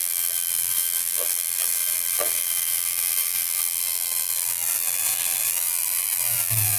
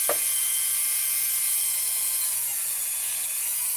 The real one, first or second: second